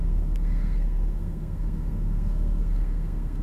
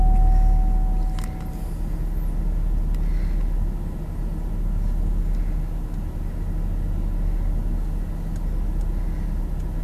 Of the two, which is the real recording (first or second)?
second